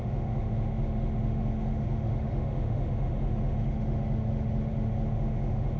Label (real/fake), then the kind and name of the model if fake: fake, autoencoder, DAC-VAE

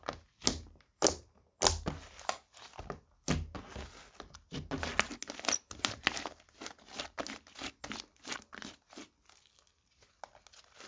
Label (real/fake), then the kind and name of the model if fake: real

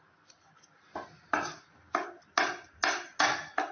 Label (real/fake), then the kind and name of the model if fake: real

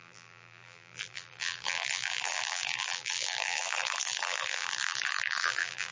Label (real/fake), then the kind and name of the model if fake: fake, vocoder, BigVGAN v2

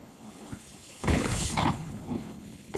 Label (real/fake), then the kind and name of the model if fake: fake, codec, HILCodec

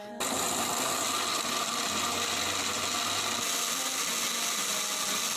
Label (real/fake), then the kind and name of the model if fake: real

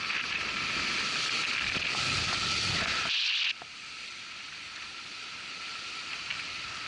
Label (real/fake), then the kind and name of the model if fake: real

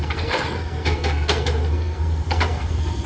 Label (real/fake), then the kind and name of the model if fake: fake, codec, SNAC